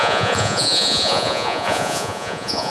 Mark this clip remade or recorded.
remade